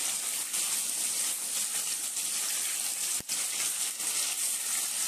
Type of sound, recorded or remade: recorded